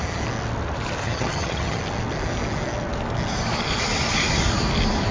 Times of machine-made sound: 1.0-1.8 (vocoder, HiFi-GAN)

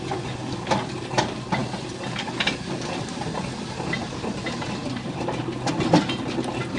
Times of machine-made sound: 4.8-5.4 (vocoder, BigVGAN v2)

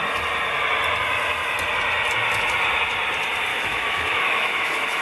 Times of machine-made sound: 3.5-5.0 (autoencoder, DAC-VAE)

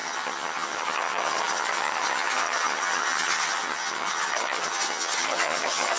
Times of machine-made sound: 0.0-6.0 (vocoder, HiFi-GAN)